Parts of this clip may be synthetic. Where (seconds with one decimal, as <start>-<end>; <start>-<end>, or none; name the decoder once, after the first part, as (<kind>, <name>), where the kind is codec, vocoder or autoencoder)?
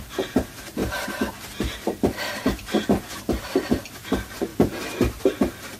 0.8-4.1 (vocoder, BigVGAN v2)